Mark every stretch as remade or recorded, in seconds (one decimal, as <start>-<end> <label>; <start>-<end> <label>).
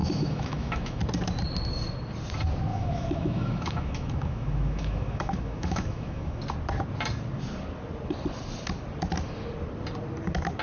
0.0-1.0 remade; 1.0-2.7 recorded; 2.7-6.4 remade; 6.4-10.6 recorded